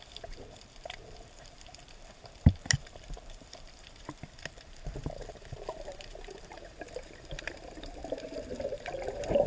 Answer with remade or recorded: remade